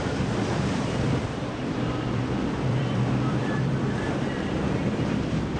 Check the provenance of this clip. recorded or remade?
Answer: remade